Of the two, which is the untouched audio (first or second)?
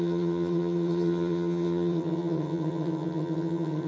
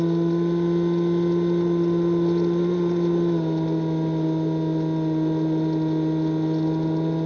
second